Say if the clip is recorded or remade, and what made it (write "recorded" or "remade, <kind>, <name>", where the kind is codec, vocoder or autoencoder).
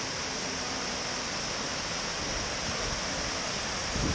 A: recorded